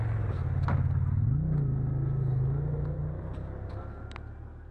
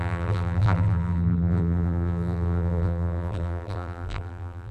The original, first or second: first